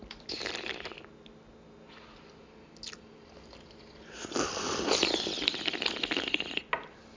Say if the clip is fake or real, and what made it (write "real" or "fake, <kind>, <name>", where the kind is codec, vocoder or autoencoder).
real